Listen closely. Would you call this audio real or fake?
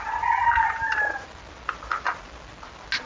real